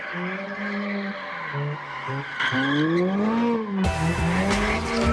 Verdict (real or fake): real